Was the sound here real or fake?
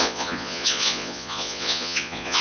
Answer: fake